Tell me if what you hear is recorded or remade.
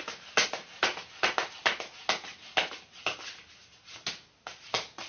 recorded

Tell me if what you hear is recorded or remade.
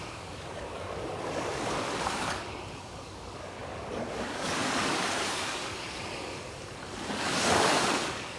remade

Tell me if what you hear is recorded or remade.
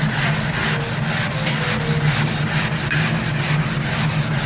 recorded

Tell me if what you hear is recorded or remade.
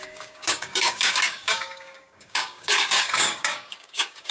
remade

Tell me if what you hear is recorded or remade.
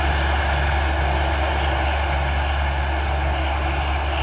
recorded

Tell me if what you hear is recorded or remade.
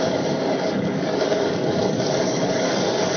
remade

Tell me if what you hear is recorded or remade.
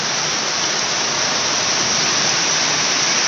recorded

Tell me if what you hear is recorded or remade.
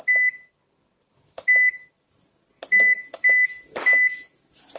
recorded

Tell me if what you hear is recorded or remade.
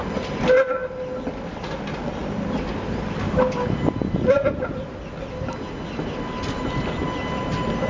recorded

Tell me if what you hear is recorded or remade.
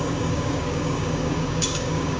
remade